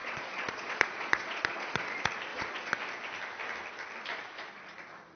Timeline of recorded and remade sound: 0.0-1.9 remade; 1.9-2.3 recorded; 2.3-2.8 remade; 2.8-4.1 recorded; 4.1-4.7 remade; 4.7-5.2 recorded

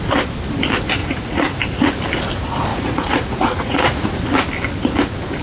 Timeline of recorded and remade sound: 0.0-1.0 recorded; 1.0-1.6 remade; 1.6-2.7 recorded; 2.7-4.2 remade; 4.2-5.4 recorded

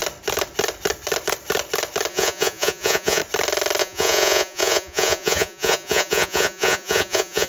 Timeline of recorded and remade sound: 0.0-2.1 recorded; 2.1-3.2 remade; 3.2-3.8 recorded; 3.8-7.5 remade

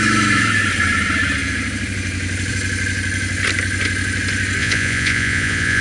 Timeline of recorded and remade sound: 0.0-4.6 recorded; 4.6-5.8 remade

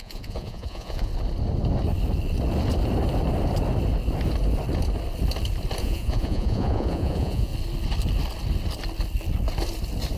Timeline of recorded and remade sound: 0.0-1.1 remade; 1.1-5.8 recorded; 5.8-7.5 remade; 7.5-10.2 recorded

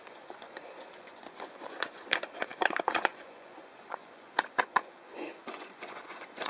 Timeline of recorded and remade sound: 0.0-6.5 remade

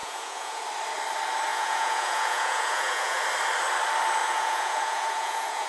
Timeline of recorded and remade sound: 0.0-0.6 remade; 0.6-1.5 recorded; 1.5-3.2 remade; 3.2-4.2 recorded; 4.2-5.7 remade

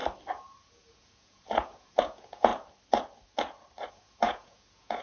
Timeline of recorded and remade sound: 0.0-0.6 recorded; 0.6-2.5 remade; 2.5-3.9 recorded; 3.9-5.0 remade